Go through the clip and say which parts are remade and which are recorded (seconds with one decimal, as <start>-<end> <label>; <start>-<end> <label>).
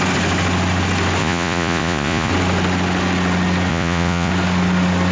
0.0-1.2 recorded; 1.2-2.3 remade; 2.3-3.7 recorded; 3.7-4.3 remade; 4.3-5.1 recorded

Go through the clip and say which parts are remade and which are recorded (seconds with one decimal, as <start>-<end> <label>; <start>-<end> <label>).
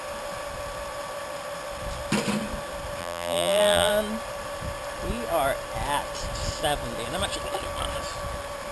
0.0-3.0 recorded; 3.0-3.9 remade; 3.9-8.7 recorded